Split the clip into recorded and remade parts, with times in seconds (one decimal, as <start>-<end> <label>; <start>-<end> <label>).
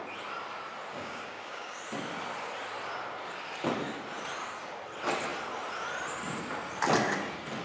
0.0-0.9 recorded; 0.9-1.8 remade; 1.8-7.6 recorded